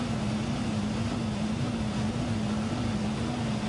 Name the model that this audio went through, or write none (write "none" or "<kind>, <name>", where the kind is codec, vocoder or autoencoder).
none